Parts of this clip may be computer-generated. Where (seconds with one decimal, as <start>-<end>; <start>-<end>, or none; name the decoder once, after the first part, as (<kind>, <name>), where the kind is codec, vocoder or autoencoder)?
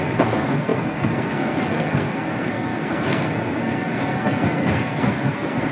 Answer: 0.0-5.7 (codec, SNAC)